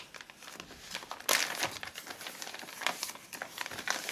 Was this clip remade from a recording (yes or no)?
no